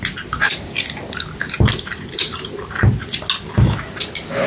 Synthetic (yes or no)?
no